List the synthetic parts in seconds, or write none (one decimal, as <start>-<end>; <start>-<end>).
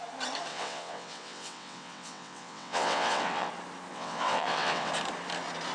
0.5-3.5; 3.9-4.9